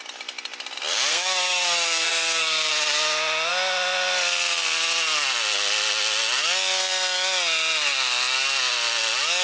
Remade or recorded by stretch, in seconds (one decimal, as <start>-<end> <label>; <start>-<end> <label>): 0.0-1.1 recorded; 1.1-2.7 remade; 2.7-9.4 recorded